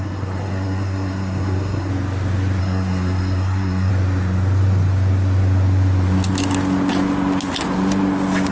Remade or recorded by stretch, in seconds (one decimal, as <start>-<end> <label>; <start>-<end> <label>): 0.0-1.9 remade; 1.9-2.6 recorded; 2.6-3.9 remade; 3.9-8.5 recorded